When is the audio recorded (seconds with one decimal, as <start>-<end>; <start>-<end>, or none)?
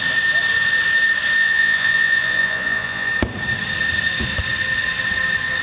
0.0-1.4; 3.1-5.6